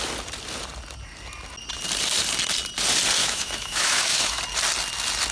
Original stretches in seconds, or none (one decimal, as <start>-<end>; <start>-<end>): 0.0-3.2; 4.4-5.3